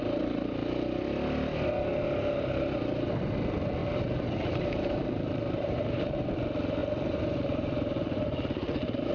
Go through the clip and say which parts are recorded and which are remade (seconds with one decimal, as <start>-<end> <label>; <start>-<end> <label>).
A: 0.0-3.8 recorded; 3.8-6.2 remade; 6.2-6.8 recorded; 6.8-9.1 remade